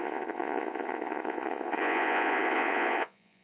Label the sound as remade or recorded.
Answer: remade